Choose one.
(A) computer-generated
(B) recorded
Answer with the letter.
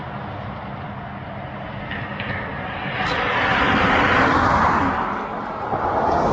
B